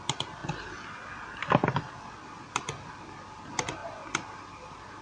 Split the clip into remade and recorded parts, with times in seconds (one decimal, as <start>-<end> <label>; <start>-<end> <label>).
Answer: 0.0-5.0 recorded